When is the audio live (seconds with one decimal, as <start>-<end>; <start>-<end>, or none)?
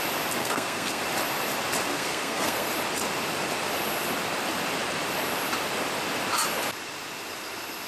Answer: 0.0-0.4; 1.0-1.9; 2.7-7.9